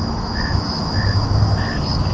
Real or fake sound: fake